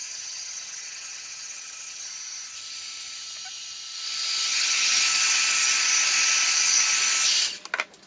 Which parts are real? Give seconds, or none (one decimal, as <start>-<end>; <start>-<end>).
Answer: 2.1-4.5; 5.0-8.1

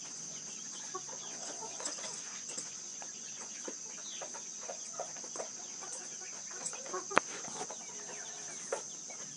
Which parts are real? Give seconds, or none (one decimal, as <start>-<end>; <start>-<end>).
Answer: 7.8-9.4

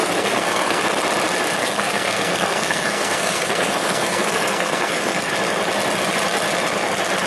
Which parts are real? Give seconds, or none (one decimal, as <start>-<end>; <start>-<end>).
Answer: 0.8-1.6; 5.3-7.3

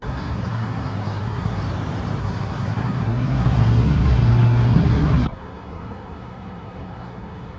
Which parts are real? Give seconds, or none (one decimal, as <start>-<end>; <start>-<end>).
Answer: 1.6-2.2